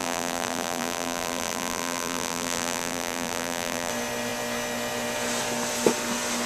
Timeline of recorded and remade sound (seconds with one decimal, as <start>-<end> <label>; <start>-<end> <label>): 0.0-3.9 remade; 3.9-6.5 recorded